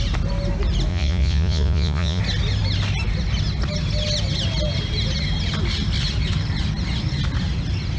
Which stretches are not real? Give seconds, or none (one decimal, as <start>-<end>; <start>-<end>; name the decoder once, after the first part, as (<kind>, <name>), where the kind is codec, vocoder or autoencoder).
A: 0.9-2.2 (vocoder, Vocos)

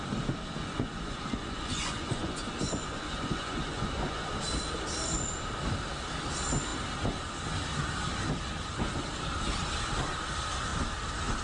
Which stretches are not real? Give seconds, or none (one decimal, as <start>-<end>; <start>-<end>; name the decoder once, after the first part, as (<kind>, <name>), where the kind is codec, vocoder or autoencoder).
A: 0.6-4.3 (vocoder, Vocos)